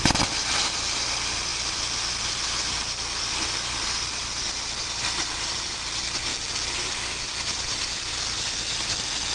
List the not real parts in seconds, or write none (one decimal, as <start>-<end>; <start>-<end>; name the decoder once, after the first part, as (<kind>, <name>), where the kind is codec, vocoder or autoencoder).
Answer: none